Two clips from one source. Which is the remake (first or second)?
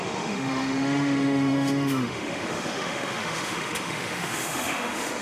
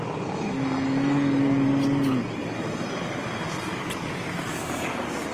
first